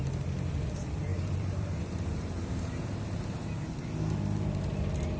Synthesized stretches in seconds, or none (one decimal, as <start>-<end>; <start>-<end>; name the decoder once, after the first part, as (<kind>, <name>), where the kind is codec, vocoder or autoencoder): 1.1-3.2 (vocoder, BigVGAN v2)